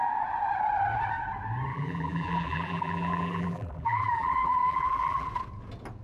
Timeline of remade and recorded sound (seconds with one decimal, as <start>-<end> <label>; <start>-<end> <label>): 0.0-1.7 recorded; 1.7-5.3 remade; 5.3-6.0 recorded